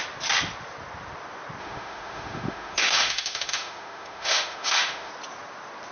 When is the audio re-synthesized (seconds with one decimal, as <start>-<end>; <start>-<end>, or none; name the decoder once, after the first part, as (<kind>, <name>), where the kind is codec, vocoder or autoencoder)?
1.6-5.1 (autoencoder, DAC-VAE)